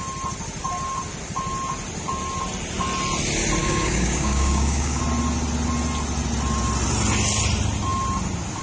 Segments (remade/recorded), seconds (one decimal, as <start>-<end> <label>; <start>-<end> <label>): 0.0-3.6 recorded; 3.6-5.0 remade; 5.0-8.6 recorded